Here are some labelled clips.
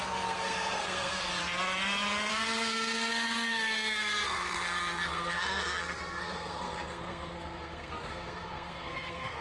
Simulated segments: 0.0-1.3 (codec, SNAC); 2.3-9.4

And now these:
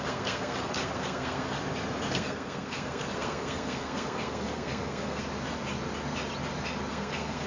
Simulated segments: 0.0-1.6 (codec, SNAC); 2.1-5.2; 6.9-7.5

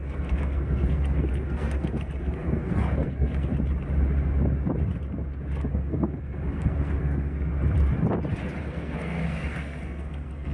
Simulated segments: 0.0-3.5 (codec, SNAC); 5.7-7.5; 8.6-10.5

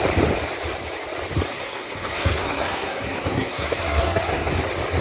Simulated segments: 1.5-4.5 (codec, SNAC)

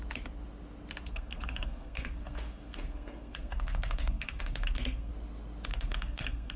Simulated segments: 1.1-5.1 (codec, SNAC); 5.7-6.6

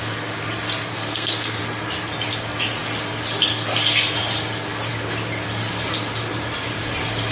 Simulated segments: 0.9-1.6 (codec, SNAC)